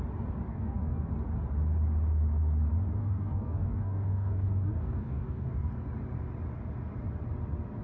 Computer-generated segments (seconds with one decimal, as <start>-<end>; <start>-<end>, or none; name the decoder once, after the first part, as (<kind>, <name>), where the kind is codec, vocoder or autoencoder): 0.5-1.1 (codec, DAC); 3.0-5.7